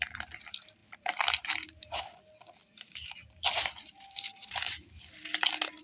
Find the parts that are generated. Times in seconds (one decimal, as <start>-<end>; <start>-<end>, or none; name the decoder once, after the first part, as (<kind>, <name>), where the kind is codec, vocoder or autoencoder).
0.8-2.0 (vocoder, BigVGAN v2); 2.6-5.1